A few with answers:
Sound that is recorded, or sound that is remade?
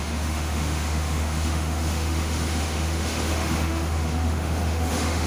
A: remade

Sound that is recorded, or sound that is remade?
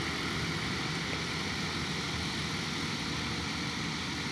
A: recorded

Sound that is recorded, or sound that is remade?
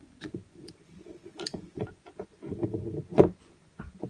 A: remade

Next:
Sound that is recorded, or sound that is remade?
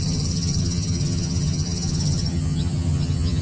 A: remade